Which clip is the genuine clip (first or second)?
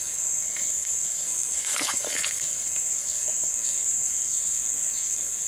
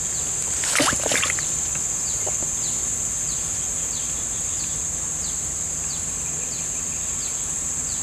second